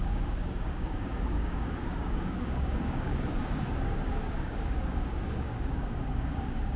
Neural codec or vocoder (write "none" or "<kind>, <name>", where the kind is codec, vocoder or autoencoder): codec, DAC